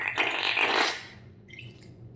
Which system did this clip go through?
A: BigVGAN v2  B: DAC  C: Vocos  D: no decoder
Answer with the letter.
C